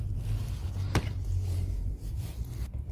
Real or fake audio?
fake